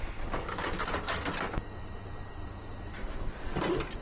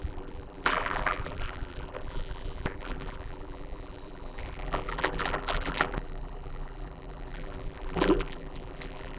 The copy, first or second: second